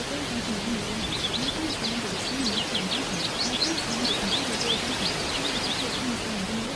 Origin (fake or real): real